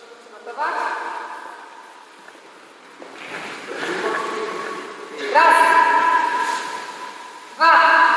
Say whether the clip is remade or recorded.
recorded